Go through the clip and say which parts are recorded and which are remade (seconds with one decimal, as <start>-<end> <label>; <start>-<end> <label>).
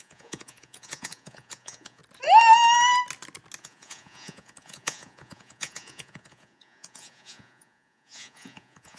0.0-2.0 remade; 2.0-3.6 recorded; 3.6-9.0 remade